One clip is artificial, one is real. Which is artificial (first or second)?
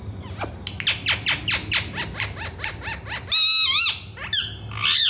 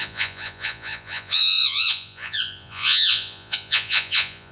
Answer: second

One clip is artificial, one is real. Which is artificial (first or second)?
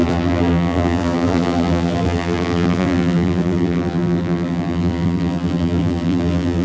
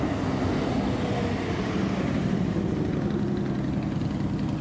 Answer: first